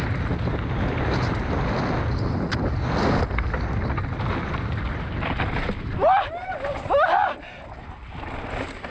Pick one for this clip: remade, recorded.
recorded